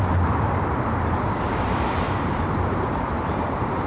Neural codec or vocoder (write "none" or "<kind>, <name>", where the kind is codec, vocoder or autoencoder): vocoder, BigVGAN v2